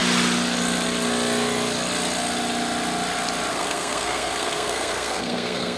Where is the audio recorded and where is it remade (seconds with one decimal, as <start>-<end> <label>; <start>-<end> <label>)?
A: 0.0-3.5 recorded; 3.5-5.8 remade